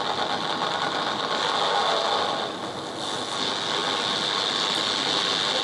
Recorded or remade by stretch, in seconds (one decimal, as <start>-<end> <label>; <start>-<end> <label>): 0.0-5.6 recorded

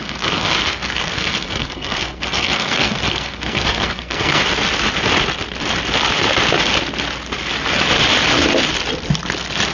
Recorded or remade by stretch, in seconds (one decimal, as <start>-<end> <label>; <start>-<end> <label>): 0.0-4.4 remade; 4.4-9.7 recorded

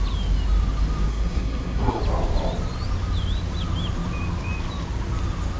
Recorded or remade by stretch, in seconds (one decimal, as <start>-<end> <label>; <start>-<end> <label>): 0.0-1.1 recorded; 1.1-2.0 remade; 2.0-5.6 recorded

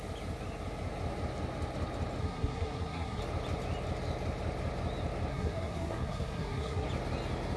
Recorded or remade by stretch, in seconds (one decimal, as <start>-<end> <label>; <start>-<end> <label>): 0.0-2.2 recorded; 2.2-3.2 remade; 3.2-5.3 recorded; 5.3-6.9 remade; 6.9-7.6 recorded

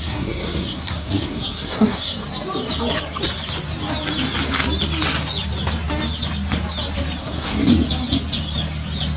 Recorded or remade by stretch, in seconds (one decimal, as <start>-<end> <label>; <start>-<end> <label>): 0.0-2.2 remade; 2.2-7.2 recorded; 7.2-7.7 remade; 7.7-9.2 recorded

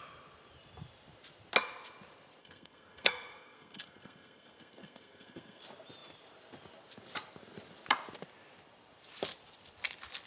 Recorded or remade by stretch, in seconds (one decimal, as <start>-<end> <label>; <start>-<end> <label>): 0.0-2.4 recorded; 2.4-5.6 remade; 5.6-10.3 recorded

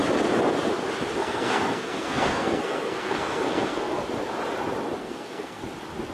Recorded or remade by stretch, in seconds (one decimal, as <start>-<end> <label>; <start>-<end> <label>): 0.0-1.2 recorded; 1.2-4.0 remade; 4.0-5.0 recorded; 5.0-5.6 remade; 5.6-6.1 recorded